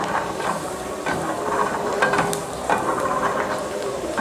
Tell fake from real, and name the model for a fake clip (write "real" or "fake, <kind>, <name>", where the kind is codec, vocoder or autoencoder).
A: fake, vocoder, BigVGAN v2